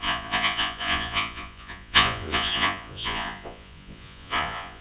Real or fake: fake